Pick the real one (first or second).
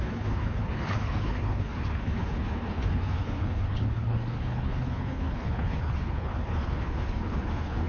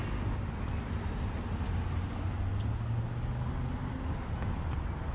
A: second